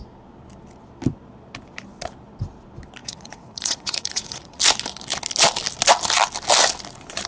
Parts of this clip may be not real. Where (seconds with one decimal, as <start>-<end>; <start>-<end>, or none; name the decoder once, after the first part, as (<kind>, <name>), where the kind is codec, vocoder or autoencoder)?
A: 3.0-4.6 (vocoder, Vocos)